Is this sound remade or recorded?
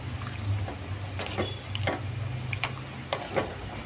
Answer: recorded